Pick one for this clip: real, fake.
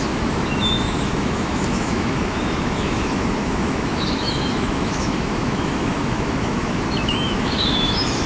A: fake